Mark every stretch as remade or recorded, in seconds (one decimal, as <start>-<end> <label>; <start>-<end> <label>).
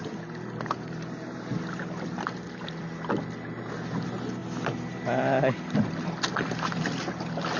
0.0-7.6 recorded